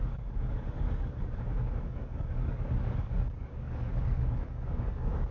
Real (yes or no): no